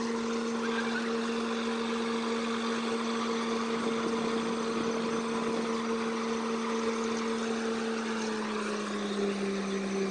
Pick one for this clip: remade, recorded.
recorded